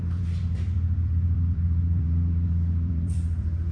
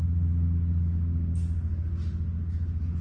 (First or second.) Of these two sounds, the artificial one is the first